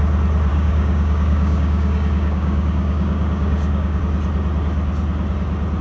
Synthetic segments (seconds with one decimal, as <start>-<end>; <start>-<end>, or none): 0.5-4.0